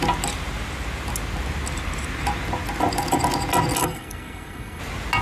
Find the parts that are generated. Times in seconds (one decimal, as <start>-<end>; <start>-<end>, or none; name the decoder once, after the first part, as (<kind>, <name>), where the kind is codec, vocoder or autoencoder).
3.8-4.8 (codec, SNAC)